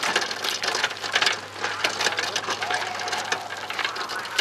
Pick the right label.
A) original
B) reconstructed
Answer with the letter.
A